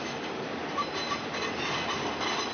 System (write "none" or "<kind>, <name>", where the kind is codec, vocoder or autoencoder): none